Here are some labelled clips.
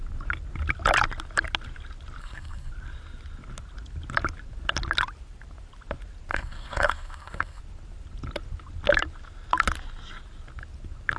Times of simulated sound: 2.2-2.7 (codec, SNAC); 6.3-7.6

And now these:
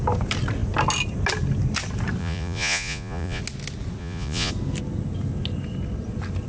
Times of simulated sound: 2.2-3.4 (vocoder, Vocos); 4.0-4.5

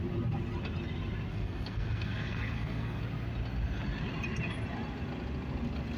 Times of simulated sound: 1.3-3.0 (codec, SNAC)

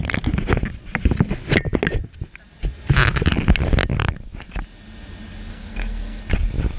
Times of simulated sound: 5.5-6.2 (codec, SNAC)

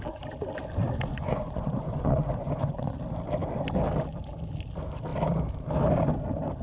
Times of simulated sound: 1.1-3.0 (vocoder, Vocos)

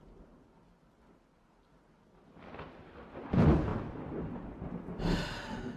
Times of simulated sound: none